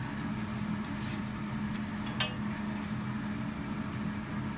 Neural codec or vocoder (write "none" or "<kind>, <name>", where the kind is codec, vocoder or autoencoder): none